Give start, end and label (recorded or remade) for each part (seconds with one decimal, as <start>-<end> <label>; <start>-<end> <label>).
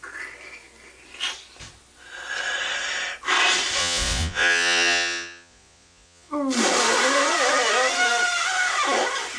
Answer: 0.0-3.8 recorded; 3.8-6.3 remade; 6.3-9.4 recorded